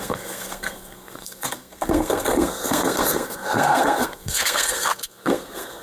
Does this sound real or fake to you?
fake